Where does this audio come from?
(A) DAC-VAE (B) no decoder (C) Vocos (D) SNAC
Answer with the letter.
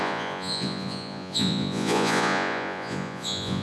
C